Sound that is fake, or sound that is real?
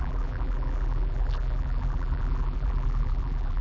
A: fake